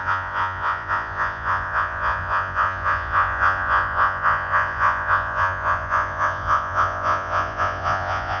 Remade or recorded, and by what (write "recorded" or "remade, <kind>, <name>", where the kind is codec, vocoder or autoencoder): remade, vocoder, Vocos